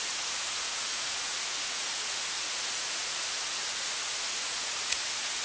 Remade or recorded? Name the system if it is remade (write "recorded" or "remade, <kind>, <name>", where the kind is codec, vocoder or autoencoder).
remade, vocoder, Vocos